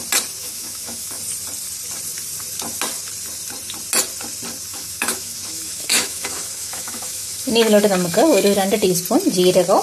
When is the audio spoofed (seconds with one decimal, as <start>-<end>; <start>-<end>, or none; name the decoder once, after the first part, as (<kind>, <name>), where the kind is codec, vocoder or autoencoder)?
0.4-1.2 (autoencoder, DAC-VAE); 4.7-8.7